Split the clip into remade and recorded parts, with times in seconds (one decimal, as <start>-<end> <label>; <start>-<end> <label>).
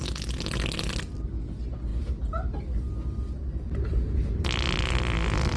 0.0-5.6 recorded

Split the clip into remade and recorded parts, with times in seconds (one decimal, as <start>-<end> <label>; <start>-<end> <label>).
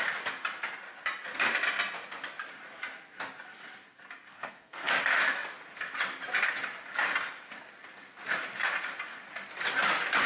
0.0-4.3 recorded; 4.3-4.9 remade; 4.9-10.3 recorded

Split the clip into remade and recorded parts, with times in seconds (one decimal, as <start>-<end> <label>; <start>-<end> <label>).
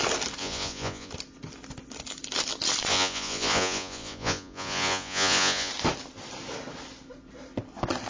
0.0-0.4 recorded; 0.4-1.1 remade; 1.1-2.9 recorded; 2.9-5.7 remade; 5.7-8.1 recorded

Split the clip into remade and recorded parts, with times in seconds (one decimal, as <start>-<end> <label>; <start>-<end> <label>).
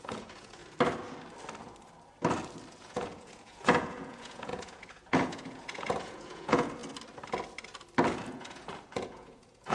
0.0-0.6 remade; 0.6-2.7 recorded; 2.7-6.8 remade; 6.8-8.1 recorded; 8.1-9.7 remade